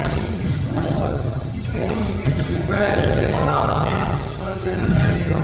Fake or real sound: fake